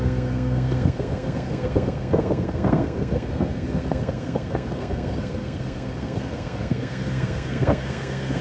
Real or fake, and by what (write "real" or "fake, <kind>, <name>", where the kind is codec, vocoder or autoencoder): fake, codec, SNAC